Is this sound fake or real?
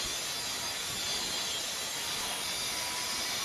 real